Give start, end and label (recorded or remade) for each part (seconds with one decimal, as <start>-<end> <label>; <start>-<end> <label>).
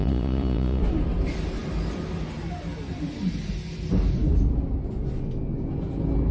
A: 0.0-0.8 remade; 0.8-6.3 recorded